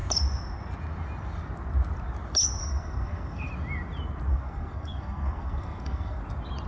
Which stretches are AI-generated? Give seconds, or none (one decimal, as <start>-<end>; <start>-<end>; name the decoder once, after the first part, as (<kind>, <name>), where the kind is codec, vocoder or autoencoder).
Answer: 2.6-3.5 (codec, SNAC); 4.3-6.2